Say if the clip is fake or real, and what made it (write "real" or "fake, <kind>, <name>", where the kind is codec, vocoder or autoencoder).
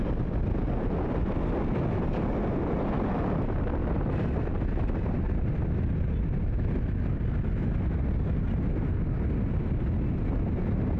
real